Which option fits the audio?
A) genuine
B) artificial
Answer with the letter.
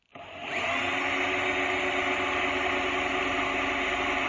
A